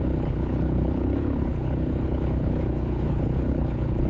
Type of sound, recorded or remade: remade